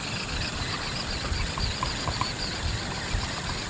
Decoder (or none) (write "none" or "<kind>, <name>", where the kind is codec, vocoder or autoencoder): none